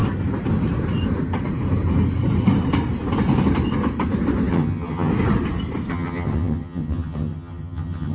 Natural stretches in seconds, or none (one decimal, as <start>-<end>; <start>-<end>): 0.0-4.5; 5.1-5.9